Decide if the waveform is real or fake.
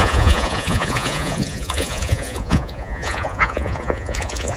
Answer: fake